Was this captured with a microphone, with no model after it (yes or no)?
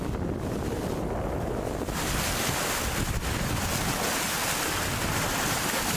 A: yes